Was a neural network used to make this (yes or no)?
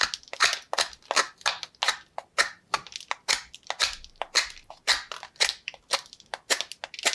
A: no